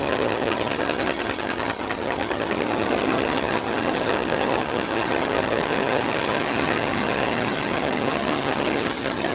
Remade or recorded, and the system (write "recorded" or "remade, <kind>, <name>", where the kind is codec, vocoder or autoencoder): remade, vocoder, HiFi-GAN